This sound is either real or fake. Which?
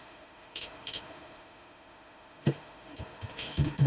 fake